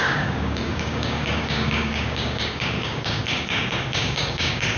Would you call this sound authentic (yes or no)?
no